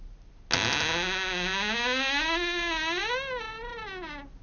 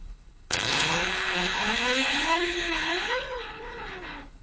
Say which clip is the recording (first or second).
first